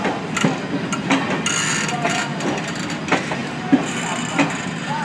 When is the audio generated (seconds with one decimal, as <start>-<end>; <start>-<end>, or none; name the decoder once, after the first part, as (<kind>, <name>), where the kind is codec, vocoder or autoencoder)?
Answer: none